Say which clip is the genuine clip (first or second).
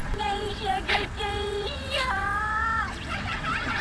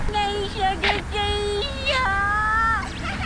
second